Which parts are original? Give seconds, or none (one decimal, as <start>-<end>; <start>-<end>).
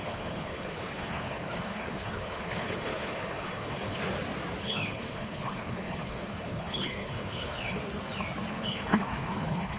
4.0-4.6; 7.8-8.5